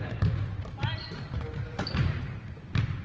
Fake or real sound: real